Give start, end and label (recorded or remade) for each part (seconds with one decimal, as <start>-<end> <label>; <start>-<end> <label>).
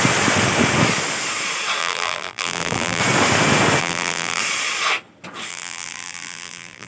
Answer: 0.0-1.8 recorded; 1.8-3.0 remade; 3.0-3.8 recorded; 3.8-4.4 remade; 4.4-5.5 recorded; 5.5-6.9 remade